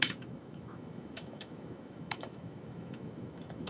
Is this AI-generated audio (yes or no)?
yes